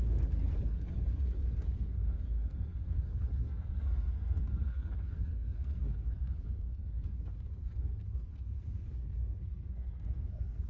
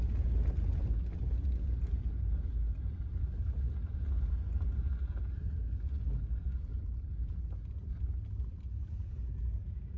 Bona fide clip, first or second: second